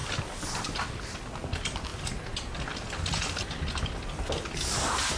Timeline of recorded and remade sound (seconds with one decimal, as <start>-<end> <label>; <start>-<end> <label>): 0.0-5.2 recorded

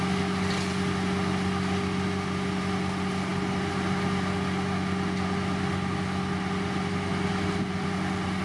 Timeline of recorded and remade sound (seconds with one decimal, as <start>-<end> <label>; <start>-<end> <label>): 0.0-8.4 recorded

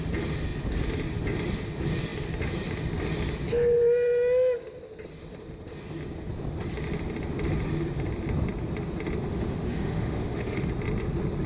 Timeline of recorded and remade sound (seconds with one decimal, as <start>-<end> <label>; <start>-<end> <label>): 0.0-9.3 recorded; 9.3-10.7 remade; 10.7-11.5 recorded